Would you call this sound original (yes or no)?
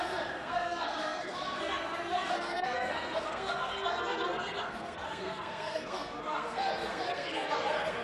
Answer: no